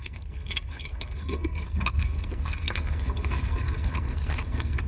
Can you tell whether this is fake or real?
fake